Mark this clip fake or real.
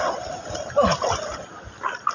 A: real